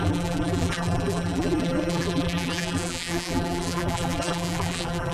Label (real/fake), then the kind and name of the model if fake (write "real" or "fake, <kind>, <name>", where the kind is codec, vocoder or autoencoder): fake, vocoder, BigVGAN v2